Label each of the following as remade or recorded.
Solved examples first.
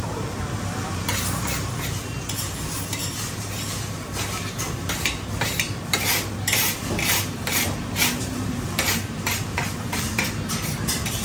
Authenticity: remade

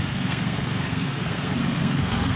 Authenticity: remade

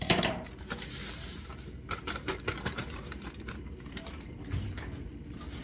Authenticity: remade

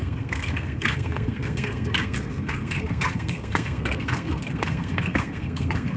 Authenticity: remade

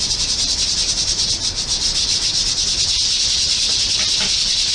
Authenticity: recorded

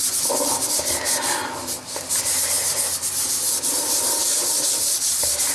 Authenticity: recorded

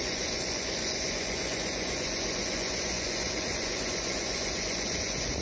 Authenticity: remade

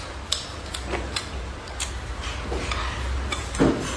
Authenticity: recorded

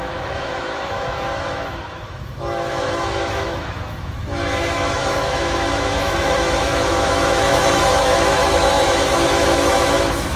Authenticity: remade